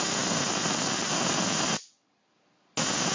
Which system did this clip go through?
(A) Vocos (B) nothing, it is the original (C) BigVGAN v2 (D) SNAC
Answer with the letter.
B